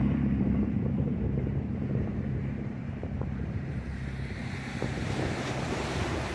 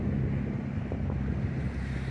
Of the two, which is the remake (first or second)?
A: first